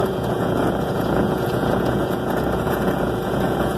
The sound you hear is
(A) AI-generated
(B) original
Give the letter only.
A